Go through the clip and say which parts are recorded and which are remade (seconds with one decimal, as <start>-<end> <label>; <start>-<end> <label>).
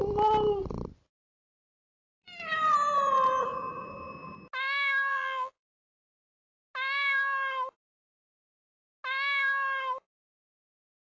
0.0-5.1 recorded; 5.1-5.7 remade; 5.7-11.1 recorded